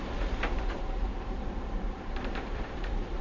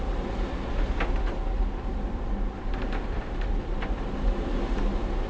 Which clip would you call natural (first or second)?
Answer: second